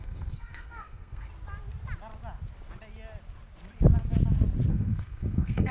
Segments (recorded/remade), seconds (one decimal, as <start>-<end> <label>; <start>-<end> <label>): 0.0-1.3 remade; 1.3-4.7 recorded; 4.7-5.7 remade